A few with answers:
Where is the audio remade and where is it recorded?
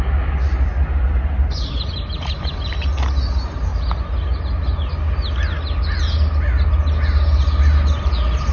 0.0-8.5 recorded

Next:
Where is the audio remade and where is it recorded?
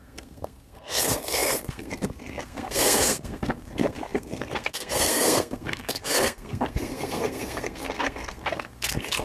0.0-9.2 remade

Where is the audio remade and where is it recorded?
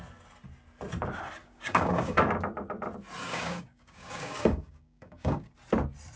0.0-1.4 recorded; 1.4-2.2 remade; 2.2-3.2 recorded; 3.2-5.5 remade; 5.5-6.2 recorded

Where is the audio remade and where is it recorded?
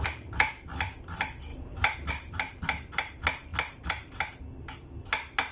0.0-5.5 recorded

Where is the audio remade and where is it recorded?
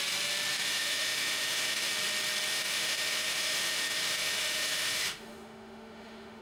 0.0-0.5 recorded; 0.5-1.9 remade; 1.9-2.5 recorded; 2.5-6.4 remade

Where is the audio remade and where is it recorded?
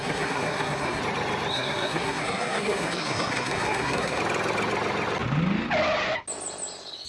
0.0-1.0 remade; 1.0-1.5 recorded; 1.5-4.2 remade; 4.2-7.1 recorded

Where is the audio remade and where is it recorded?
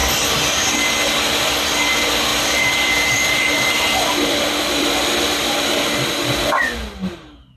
0.0-0.6 remade; 0.6-2.3 recorded; 2.3-5.8 remade; 5.8-7.6 recorded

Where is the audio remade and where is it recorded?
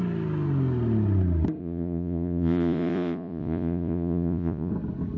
0.0-1.6 recorded; 1.6-4.7 remade; 4.7-5.2 recorded